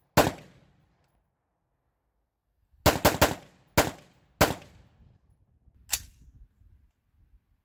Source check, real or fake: real